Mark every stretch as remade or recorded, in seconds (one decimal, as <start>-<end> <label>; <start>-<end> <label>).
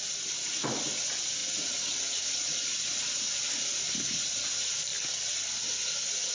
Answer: 0.0-6.3 recorded